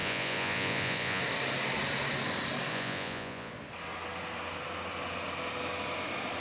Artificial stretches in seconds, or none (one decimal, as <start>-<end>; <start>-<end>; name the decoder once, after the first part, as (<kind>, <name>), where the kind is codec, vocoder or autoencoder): 0.0-1.2 (vocoder, Vocos); 2.7-3.5